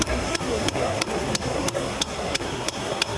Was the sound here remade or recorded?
remade